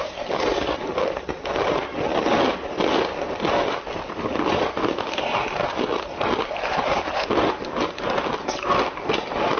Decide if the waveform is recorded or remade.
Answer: recorded